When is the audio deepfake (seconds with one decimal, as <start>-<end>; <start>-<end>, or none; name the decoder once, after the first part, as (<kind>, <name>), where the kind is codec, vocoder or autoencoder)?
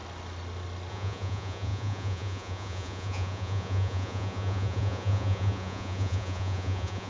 0.9-7.1 (vocoder, Vocos)